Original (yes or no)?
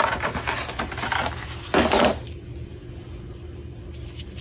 yes